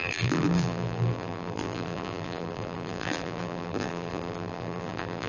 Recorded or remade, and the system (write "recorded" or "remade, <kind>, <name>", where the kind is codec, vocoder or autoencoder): remade, vocoder, BigVGAN v2